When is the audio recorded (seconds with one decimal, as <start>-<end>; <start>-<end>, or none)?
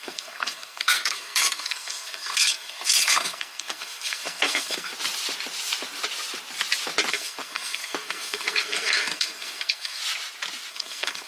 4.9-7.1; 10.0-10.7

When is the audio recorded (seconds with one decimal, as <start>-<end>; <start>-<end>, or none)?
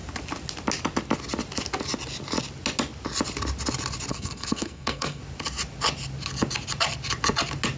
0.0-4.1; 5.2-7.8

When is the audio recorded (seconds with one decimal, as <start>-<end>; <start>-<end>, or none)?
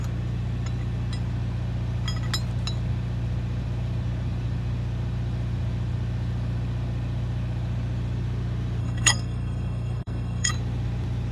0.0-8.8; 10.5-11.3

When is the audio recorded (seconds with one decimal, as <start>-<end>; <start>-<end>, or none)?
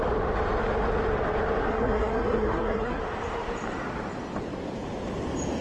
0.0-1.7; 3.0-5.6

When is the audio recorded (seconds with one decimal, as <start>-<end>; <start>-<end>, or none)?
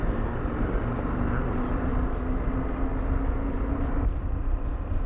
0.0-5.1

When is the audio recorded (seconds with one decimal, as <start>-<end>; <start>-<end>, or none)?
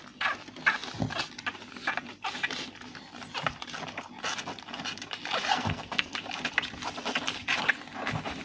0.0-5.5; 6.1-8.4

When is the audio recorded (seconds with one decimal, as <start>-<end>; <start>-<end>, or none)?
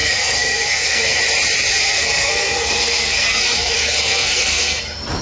1.2-1.7; 4.8-5.2